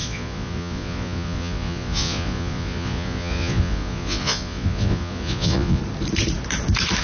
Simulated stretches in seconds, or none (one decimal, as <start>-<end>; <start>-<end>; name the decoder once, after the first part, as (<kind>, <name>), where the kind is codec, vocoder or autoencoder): 0.0-5.8 (vocoder, Vocos)